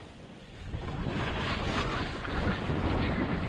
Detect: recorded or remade remade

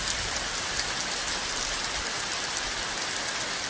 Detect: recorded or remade recorded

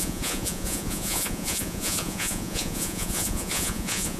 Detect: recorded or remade remade